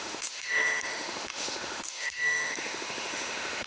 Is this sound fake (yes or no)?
yes